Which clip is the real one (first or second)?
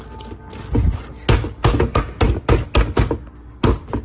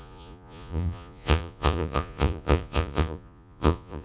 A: first